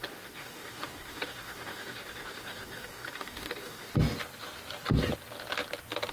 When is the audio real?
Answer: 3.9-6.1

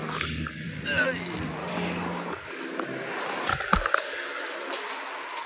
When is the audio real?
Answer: 0.8-1.6; 2.6-3.5; 4.4-5.5

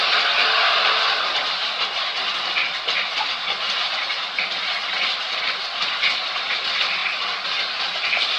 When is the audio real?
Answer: 0.0-8.4